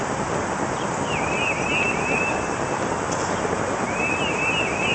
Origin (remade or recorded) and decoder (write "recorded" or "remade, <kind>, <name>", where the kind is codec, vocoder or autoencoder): recorded